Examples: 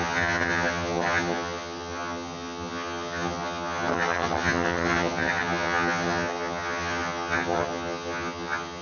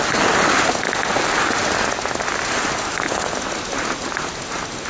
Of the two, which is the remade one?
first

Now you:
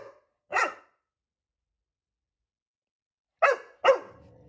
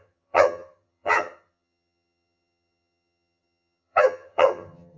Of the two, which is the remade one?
second